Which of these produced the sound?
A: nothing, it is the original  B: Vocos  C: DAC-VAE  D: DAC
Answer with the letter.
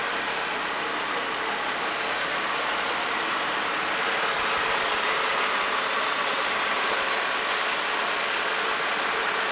A